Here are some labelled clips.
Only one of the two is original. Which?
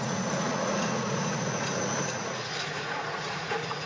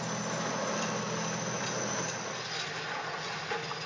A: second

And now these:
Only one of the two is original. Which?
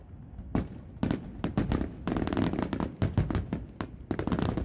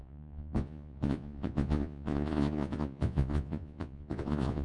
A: first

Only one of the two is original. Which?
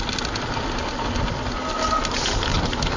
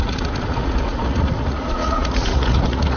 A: first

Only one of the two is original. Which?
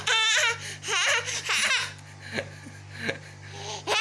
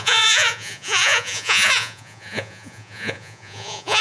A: first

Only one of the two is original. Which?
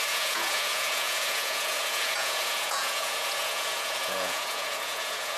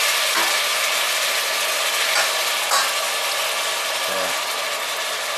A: second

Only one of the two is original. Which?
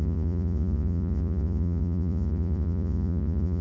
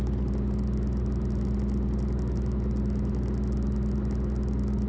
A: second